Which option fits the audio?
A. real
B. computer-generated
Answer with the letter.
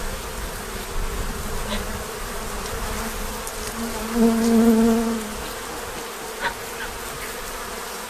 A